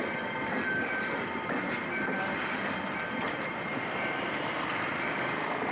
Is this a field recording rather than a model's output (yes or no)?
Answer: no